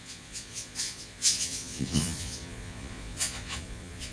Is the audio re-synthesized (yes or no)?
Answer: yes